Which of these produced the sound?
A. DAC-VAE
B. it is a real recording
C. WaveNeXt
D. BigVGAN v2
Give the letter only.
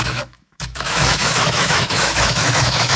A